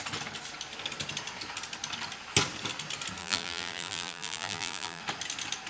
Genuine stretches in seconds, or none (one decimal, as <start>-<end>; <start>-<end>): 0.0-3.2; 5.0-5.7

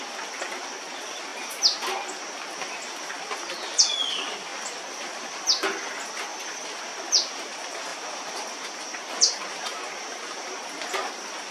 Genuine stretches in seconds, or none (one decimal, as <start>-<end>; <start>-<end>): 0.0-6.3; 6.8-7.9; 9.0-11.5

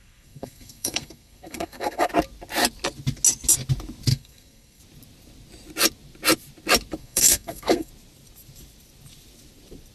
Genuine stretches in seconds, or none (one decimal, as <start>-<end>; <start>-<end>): 2.1-4.1; 4.8-7.0; 7.9-9.9

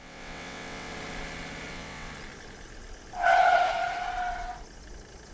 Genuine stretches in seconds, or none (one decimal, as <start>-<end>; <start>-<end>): 0.9-1.7; 2.1-5.3

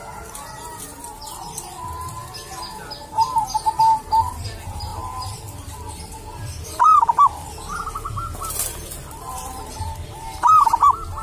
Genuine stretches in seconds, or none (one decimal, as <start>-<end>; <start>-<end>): 2.2-3.8

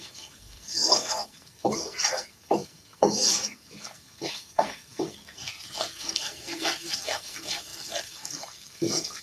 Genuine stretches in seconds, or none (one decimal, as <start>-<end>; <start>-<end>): none

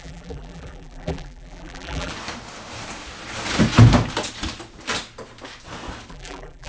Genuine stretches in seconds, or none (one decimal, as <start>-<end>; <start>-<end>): 2.1-6.1